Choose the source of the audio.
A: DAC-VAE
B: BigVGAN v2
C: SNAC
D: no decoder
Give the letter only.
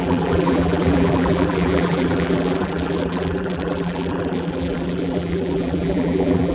B